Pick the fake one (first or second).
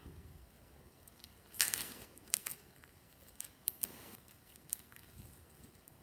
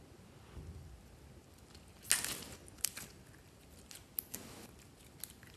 first